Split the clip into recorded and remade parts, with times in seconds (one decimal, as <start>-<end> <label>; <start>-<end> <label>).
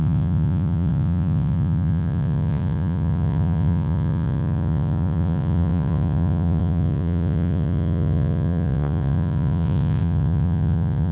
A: 0.0-11.1 remade